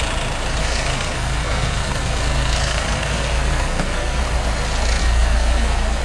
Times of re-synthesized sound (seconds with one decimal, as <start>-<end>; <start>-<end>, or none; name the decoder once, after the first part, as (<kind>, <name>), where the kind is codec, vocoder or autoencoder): 0.6-4.2 (codec, SNAC); 5.0-6.0